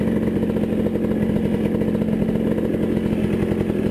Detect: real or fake real